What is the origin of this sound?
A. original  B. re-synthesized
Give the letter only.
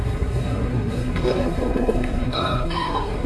B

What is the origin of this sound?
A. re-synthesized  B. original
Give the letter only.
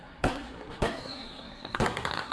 A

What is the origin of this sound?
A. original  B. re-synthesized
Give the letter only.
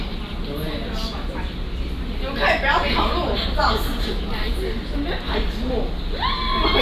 A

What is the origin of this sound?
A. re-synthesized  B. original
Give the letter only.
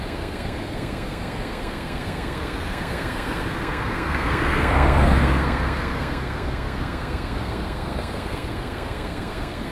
A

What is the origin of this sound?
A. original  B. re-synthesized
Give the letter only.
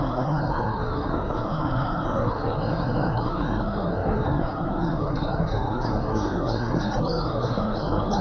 B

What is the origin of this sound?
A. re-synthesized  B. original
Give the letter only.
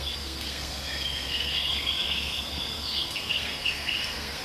A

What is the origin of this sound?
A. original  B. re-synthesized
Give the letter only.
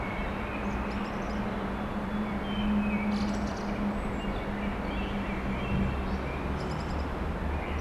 A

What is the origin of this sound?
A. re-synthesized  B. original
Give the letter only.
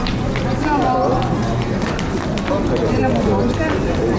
B